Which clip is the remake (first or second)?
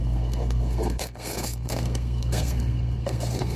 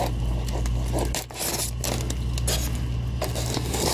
first